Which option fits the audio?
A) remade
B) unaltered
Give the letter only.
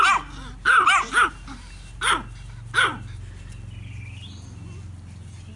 B